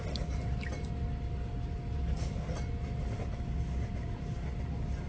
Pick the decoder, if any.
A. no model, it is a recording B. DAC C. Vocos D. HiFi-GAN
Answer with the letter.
A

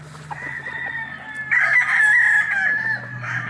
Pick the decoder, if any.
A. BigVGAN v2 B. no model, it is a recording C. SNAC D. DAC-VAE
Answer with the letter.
B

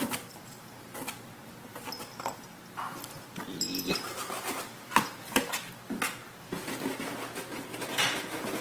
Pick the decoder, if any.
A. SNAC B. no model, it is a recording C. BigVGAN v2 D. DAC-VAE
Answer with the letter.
B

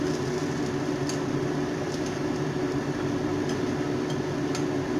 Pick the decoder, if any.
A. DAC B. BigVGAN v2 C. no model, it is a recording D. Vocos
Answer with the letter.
C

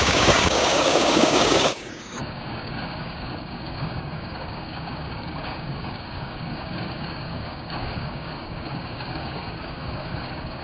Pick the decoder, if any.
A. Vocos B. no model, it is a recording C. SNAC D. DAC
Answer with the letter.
D